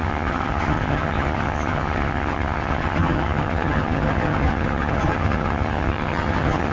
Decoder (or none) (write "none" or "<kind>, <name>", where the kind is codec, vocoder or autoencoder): vocoder, HiFi-GAN